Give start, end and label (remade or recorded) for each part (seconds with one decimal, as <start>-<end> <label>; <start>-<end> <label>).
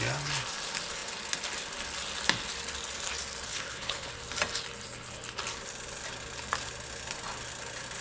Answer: 0.0-3.5 recorded; 3.5-4.1 remade; 4.1-8.0 recorded